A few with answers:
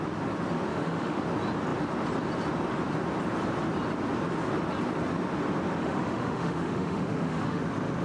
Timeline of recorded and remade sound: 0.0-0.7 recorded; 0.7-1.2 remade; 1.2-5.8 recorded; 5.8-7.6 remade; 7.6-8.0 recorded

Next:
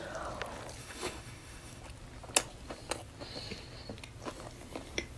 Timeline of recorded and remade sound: 0.0-0.8 recorded; 0.8-1.8 remade; 1.8-5.2 recorded

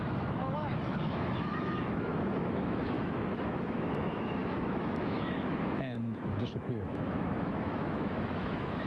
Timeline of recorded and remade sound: 0.0-8.9 remade

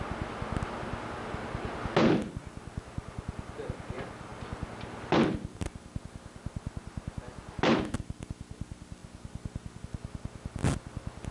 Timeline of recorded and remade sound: 0.0-11.3 recorded

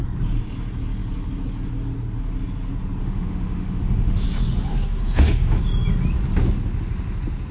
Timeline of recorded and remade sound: 0.0-3.0 recorded; 3.0-4.2 remade; 4.2-4.7 recorded; 4.7-5.6 remade; 5.6-7.5 recorded

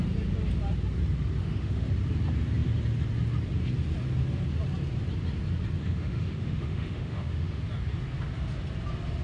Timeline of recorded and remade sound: 0.0-1.4 recorded; 1.4-1.9 remade; 1.9-5.8 recorded; 5.8-7.6 remade; 7.6-9.2 recorded

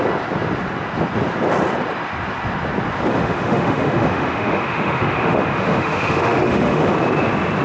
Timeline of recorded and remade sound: 0.0-3.1 recorded; 3.1-6.9 remade; 6.9-7.6 recorded

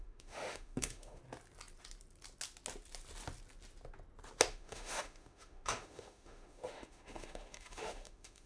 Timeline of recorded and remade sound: 0.0-1.2 remade; 1.2-4.5 recorded; 4.5-8.5 remade